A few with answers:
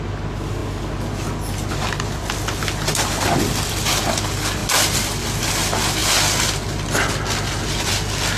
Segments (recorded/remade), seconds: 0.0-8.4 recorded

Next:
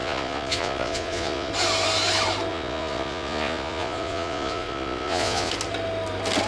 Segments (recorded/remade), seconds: 0.0-1.5 remade; 1.5-2.5 recorded; 2.5-5.5 remade; 5.5-6.5 recorded

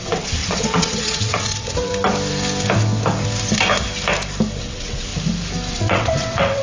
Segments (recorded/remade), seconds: 0.0-1.9 remade; 1.9-4.6 recorded; 4.6-5.1 remade; 5.1-5.7 recorded; 5.7-6.6 remade

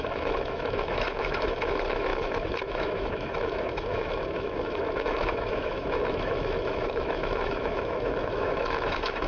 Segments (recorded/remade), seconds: 0.0-9.3 remade

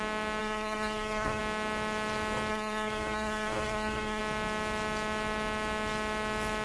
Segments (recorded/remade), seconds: 0.0-0.4 recorded; 0.4-1.4 remade; 1.4-2.5 recorded; 2.5-4.2 remade; 4.2-6.6 recorded